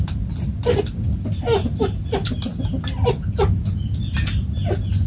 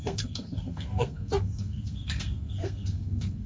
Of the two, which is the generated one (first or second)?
second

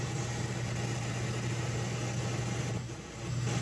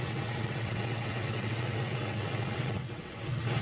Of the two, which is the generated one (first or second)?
second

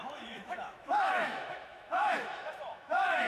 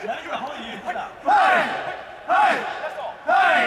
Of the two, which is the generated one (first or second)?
first